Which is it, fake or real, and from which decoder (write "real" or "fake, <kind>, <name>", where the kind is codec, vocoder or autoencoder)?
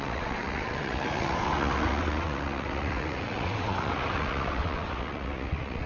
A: fake, vocoder, WaveNeXt